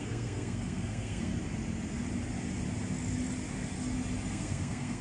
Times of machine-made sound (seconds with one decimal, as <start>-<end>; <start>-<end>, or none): 0.0-1.3; 4.3-5.0